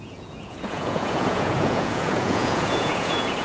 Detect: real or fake fake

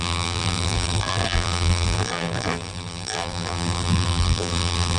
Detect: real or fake fake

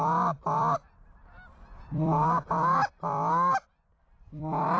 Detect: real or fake fake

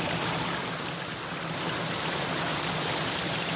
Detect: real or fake real